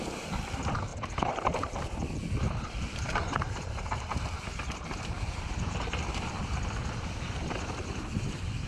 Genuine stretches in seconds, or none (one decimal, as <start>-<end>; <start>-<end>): none